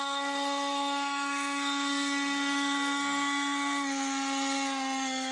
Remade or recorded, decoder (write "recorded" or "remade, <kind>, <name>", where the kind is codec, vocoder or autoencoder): remade, codec, SNAC